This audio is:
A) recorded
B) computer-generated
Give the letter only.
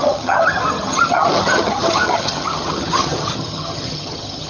B